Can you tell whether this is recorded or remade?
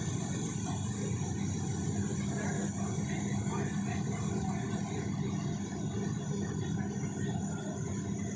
recorded